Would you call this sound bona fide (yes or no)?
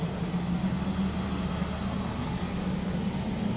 yes